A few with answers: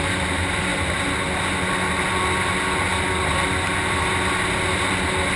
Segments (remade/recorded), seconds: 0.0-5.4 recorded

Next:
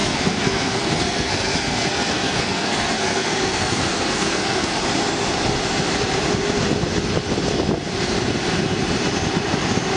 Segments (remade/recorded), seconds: 0.0-4.8 remade; 4.8-10.0 recorded

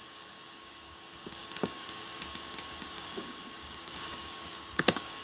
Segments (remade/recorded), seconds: 0.0-5.2 remade

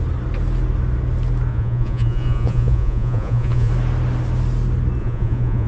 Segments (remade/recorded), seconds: 0.0-1.5 recorded; 1.5-3.7 remade; 3.7-5.0 recorded; 5.0-5.7 remade

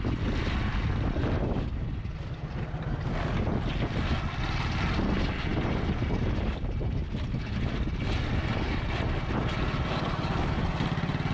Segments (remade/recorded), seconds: 0.0-11.3 recorded